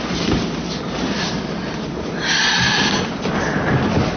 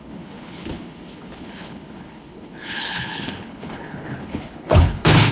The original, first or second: first